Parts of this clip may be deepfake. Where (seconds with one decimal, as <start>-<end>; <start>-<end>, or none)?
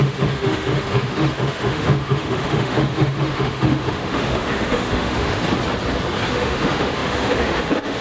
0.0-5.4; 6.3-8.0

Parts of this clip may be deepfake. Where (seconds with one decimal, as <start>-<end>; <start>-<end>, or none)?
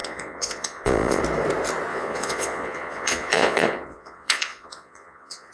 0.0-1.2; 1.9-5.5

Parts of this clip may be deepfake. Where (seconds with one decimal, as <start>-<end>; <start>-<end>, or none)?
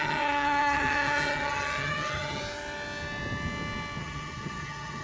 0.0-2.4; 4.0-5.0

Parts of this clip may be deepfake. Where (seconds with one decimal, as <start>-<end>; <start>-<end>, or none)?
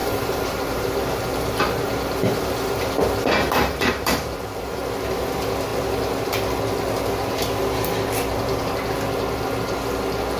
0.0-5.2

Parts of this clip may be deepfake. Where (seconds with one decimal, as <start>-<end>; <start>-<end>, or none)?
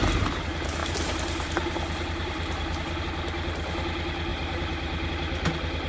0.8-3.0; 4.3-5.1